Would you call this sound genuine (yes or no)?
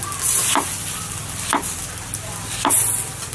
yes